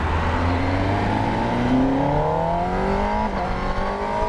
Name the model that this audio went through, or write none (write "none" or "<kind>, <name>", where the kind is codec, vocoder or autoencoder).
none